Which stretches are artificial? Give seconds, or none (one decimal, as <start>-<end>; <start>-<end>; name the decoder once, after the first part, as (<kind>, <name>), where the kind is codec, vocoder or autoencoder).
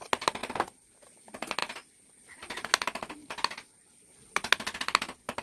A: 0.4-0.9 (vocoder, BigVGAN v2)